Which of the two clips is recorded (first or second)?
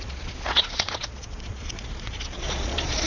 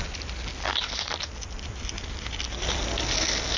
second